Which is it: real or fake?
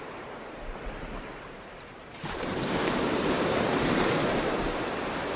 fake